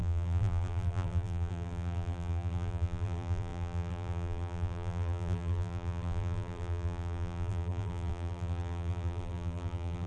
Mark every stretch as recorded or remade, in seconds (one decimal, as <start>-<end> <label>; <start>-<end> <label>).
0.0-10.1 remade